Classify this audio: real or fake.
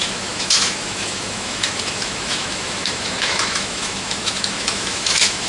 fake